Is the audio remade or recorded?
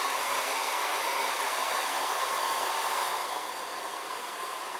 remade